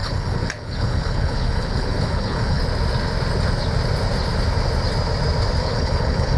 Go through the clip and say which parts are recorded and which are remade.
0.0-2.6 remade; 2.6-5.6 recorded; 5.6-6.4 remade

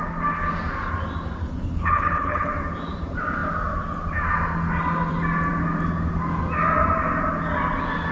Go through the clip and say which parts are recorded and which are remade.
0.0-1.4 recorded; 1.4-2.5 remade; 2.5-8.1 recorded

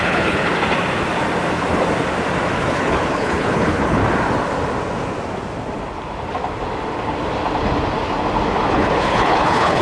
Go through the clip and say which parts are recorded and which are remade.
0.0-0.5 remade; 0.5-2.6 recorded; 2.6-4.0 remade; 4.0-8.7 recorded; 8.7-9.8 remade

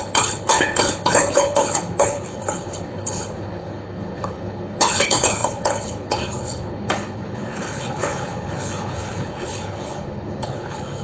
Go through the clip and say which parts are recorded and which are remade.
0.0-11.0 remade

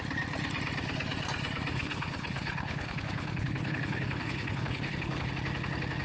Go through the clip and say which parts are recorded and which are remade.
0.0-1.7 recorded; 1.7-5.3 remade; 5.3-6.0 recorded